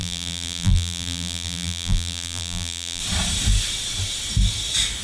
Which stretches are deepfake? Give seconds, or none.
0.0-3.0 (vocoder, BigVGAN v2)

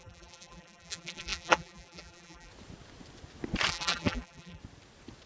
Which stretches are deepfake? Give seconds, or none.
0.0-2.5 (vocoder, BigVGAN v2); 3.7-4.6

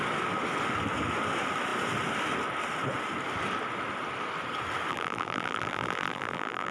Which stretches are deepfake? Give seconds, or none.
4.9-6.7 (vocoder, BigVGAN v2)

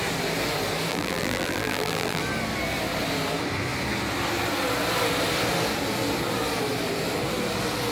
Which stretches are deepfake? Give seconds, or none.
0.9-2.2 (vocoder, BigVGAN v2)

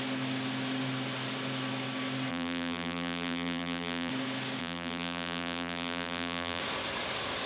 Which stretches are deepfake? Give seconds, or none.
2.3-4.1 (vocoder, BigVGAN v2); 4.6-6.6

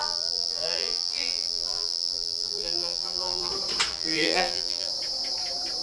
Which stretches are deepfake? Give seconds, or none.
0.0-3.5 (vocoder, BigVGAN v2); 3.9-4.9